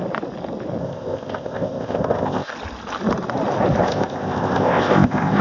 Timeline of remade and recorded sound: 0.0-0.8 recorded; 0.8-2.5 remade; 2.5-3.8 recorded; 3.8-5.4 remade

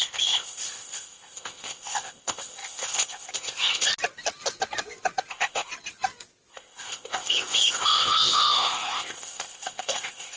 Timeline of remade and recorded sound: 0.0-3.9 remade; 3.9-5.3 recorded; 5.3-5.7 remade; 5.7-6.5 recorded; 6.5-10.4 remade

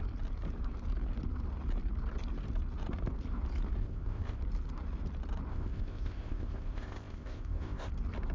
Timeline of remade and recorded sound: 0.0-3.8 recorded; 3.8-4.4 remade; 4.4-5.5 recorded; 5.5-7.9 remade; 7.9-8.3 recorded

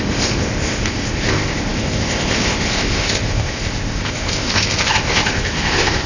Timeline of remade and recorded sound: 0.0-6.1 remade

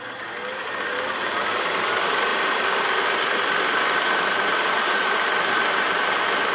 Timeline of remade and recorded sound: 0.0-6.5 recorded

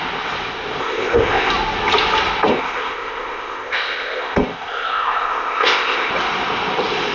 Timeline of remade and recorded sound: 0.0-0.8 recorded; 0.8-1.5 remade; 1.5-2.5 recorded; 2.5-6.1 remade; 6.1-7.1 recorded